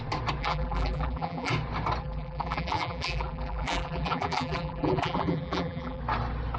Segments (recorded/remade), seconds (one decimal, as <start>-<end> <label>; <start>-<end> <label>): 0.0-0.4 recorded; 0.4-1.5 remade; 1.5-2.0 recorded; 2.0-6.0 remade; 6.0-6.6 recorded